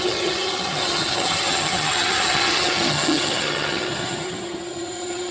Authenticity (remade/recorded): remade